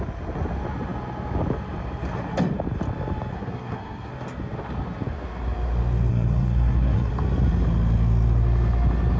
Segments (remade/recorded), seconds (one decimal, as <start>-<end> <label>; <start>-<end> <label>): 0.0-3.3 recorded; 3.3-4.1 remade; 4.1-6.1 recorded; 6.1-7.1 remade; 7.1-9.2 recorded